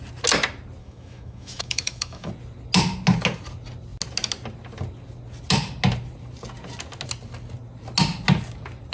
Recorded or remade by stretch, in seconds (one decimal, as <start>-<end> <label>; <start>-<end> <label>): 0.0-0.8 recorded; 0.8-2.3 remade; 2.3-8.9 recorded